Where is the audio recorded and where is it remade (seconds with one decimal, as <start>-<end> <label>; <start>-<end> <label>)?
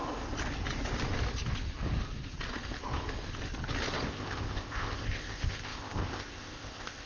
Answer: 0.0-4.1 recorded; 4.1-7.1 remade